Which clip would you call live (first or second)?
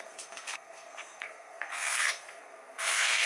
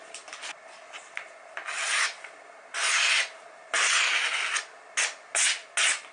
second